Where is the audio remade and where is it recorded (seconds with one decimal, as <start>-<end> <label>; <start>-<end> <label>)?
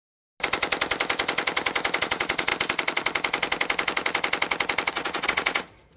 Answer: 0.0-2.0 recorded; 2.0-2.5 remade; 2.5-4.9 recorded; 4.9-6.0 remade